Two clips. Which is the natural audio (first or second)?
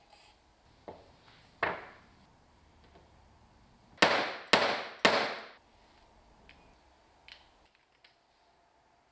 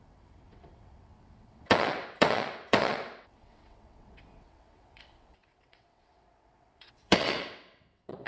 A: first